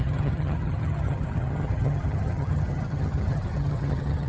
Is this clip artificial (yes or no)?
yes